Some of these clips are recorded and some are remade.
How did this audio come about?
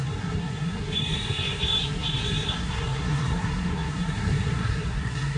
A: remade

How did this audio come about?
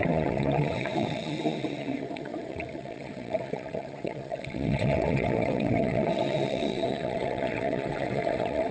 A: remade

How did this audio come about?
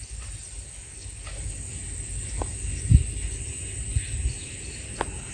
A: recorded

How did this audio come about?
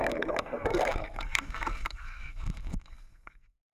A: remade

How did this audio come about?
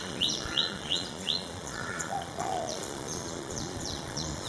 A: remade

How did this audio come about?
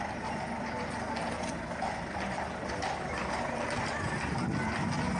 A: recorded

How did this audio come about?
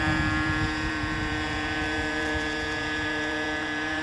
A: remade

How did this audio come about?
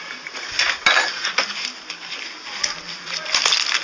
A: recorded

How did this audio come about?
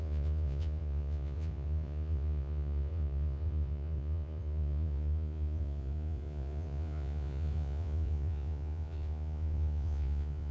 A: remade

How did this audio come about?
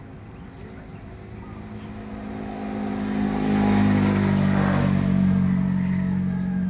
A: recorded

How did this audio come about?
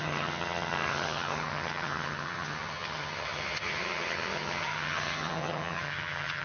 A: remade